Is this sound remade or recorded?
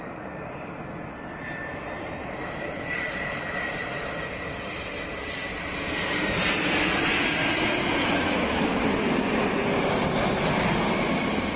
recorded